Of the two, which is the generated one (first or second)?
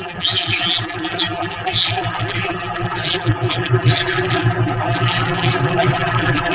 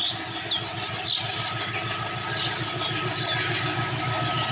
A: first